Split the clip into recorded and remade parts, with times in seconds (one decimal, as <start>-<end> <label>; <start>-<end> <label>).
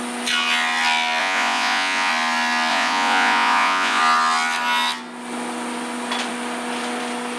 0.0-1.2 recorded; 1.2-2.1 remade; 2.1-2.7 recorded; 2.7-4.0 remade; 4.0-7.4 recorded